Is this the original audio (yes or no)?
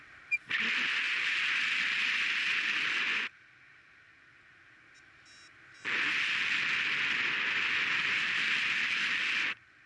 yes